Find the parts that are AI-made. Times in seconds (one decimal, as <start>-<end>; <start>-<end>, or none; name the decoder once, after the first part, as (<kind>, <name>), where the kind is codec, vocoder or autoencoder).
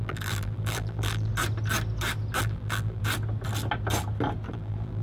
0.0-1.3 (vocoder, BigVGAN v2); 2.4-3.0; 4.5-5.0